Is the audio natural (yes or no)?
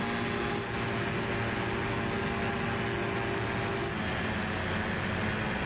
yes